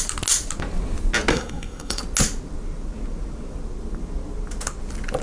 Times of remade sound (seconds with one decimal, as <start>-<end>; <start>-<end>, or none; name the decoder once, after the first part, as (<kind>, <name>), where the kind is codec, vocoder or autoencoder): 1.3-2.0 (codec, SNAC)